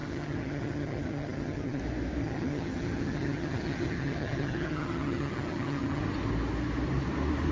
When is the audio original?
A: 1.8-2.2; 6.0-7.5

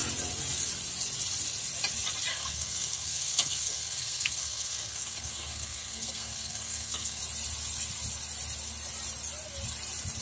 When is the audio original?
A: 0.0-2.3; 7.2-10.2

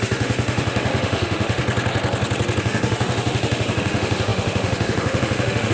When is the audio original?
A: 1.6-2.6

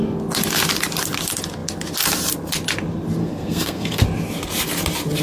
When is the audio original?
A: 0.0-3.2; 4.0-5.2

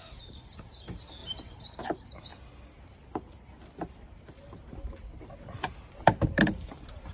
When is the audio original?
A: 2.3-5.9

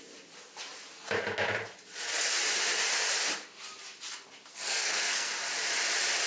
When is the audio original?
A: 0.0-4.5; 5.3-6.3

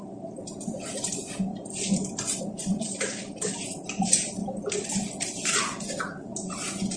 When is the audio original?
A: 1.5-2.4; 4.4-5.2